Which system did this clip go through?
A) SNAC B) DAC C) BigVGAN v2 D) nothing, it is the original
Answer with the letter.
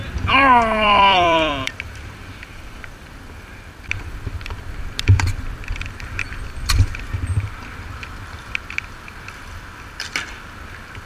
C